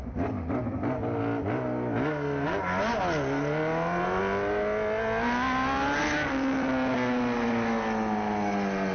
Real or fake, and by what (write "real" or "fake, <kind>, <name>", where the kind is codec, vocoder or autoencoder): real